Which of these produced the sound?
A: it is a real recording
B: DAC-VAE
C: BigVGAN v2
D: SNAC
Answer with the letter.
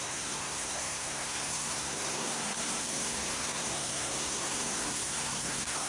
D